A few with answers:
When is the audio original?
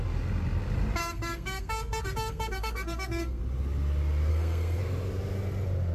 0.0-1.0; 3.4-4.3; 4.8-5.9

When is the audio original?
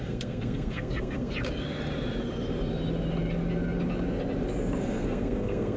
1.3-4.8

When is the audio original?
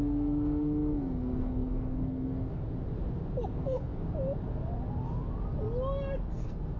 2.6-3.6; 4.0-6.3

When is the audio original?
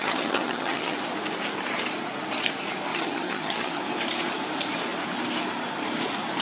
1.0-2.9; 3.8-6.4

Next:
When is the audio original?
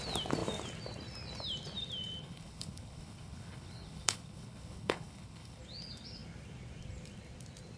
0.0-2.2; 5.6-7.8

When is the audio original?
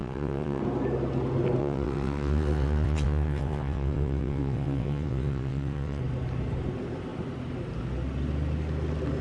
0.6-1.6; 6.0-9.2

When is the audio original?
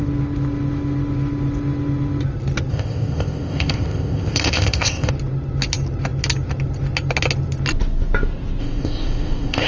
0.0-2.7; 5.1-8.6